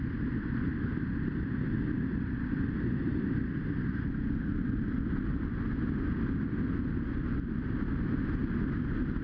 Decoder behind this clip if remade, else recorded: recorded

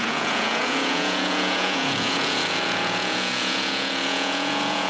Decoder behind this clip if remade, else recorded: remade, vocoder, Vocos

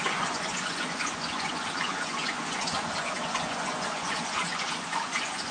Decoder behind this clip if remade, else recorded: remade, vocoder, Vocos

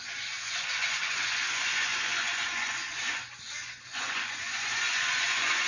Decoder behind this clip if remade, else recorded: remade, vocoder, Vocos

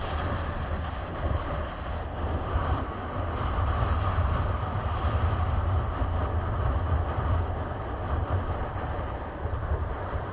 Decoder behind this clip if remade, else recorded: recorded